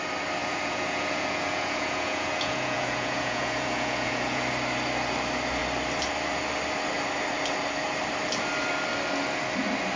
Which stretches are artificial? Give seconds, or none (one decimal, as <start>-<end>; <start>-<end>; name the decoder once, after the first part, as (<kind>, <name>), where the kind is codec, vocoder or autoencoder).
0.4-4.4 (vocoder, Vocos)